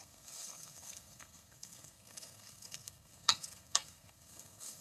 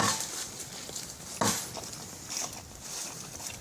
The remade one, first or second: first